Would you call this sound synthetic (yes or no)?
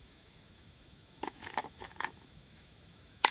yes